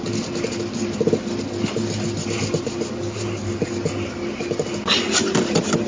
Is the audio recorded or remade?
recorded